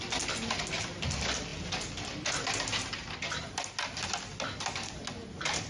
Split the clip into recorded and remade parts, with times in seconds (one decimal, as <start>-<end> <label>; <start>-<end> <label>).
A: 0.0-5.7 recorded